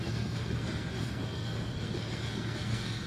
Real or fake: fake